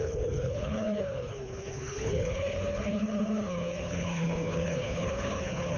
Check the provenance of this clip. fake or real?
fake